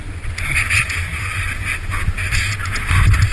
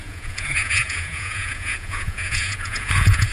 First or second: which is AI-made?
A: second